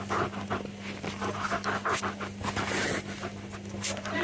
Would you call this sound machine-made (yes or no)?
yes